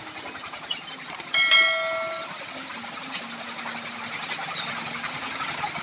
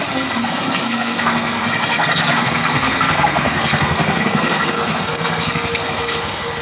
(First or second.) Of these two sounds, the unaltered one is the first